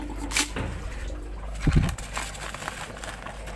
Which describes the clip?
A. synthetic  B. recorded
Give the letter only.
B